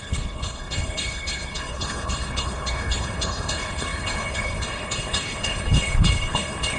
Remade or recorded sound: remade